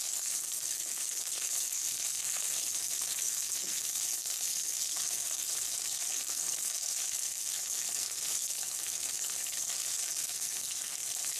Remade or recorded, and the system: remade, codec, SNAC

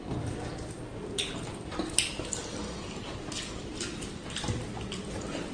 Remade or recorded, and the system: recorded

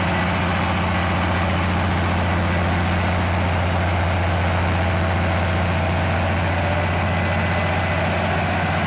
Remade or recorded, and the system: recorded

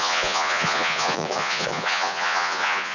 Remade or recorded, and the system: remade, vocoder, Vocos